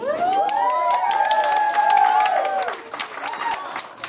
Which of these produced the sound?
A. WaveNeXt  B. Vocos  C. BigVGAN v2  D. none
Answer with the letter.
D